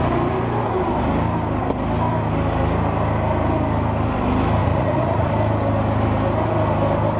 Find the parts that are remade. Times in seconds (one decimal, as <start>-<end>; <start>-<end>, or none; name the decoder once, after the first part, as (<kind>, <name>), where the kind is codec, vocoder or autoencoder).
4.6-5.3 (vocoder, Vocos)